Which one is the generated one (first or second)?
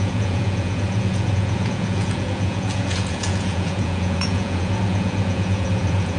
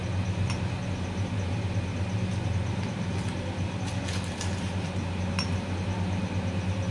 first